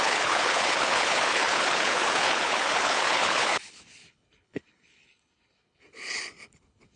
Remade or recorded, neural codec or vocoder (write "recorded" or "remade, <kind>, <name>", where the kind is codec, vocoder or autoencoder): remade, codec, HILCodec